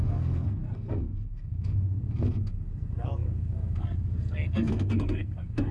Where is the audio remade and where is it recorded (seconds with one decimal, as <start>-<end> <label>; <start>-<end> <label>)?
0.0-5.7 remade